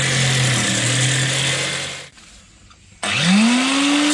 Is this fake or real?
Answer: real